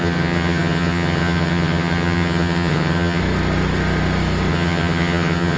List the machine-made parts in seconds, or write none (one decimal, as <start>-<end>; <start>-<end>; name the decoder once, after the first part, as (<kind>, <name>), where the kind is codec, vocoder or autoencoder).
0.0-3.2 (vocoder, HiFi-GAN); 4.5-5.6